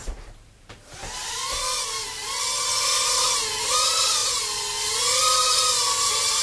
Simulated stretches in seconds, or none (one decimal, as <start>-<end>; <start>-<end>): none